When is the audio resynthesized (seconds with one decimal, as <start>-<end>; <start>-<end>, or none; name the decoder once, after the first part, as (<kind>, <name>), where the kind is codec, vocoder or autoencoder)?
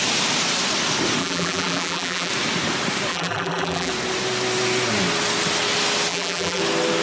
1.2-2.3 (vocoder, BigVGAN v2); 3.1-3.9; 6.1-6.6